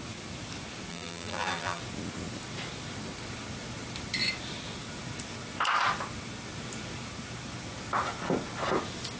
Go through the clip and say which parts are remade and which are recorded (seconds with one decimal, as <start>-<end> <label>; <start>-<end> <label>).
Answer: 0.0-0.9 recorded; 0.9-1.8 remade; 1.8-9.2 recorded